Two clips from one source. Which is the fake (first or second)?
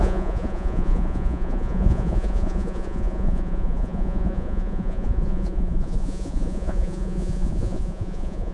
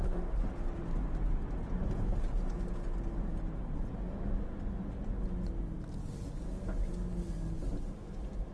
first